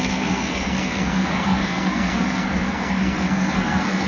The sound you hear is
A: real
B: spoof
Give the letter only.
B